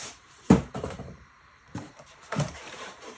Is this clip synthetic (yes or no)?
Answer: yes